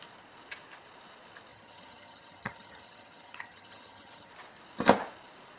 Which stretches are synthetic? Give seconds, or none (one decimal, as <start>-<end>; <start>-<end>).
1.5-4.3